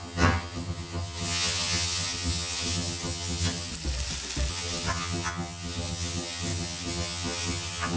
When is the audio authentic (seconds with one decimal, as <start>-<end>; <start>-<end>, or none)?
3.7-4.5